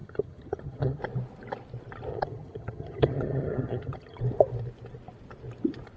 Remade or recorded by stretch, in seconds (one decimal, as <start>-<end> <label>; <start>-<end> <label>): 0.0-1.0 remade; 1.0-2.1 recorded; 2.1-4.2 remade; 4.2-6.0 recorded